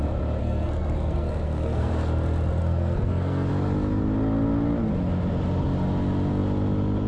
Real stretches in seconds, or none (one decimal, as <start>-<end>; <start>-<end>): 0.0-0.4; 1.9-2.6; 3.5-7.1